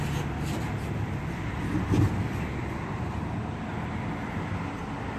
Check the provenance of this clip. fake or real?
real